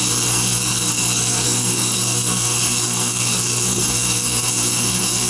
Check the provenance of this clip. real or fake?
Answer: fake